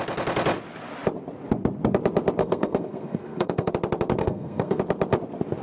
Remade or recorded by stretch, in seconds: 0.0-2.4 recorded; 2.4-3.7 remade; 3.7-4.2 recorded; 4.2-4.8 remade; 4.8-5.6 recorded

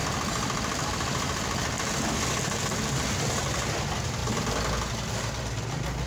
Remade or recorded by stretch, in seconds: 0.0-6.1 recorded

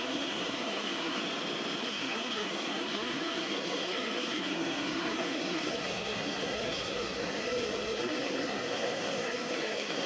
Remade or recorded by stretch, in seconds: 0.0-1.2 remade; 1.2-1.8 recorded; 1.8-10.1 remade